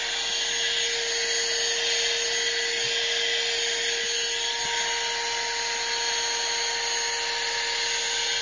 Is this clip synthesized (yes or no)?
no